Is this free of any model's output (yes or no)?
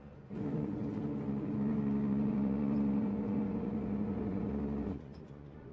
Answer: no